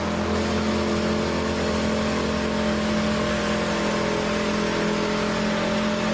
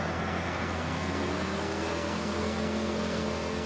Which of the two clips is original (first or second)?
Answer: first